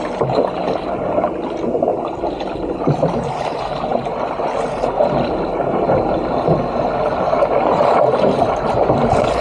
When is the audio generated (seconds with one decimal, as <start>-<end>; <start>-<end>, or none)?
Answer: none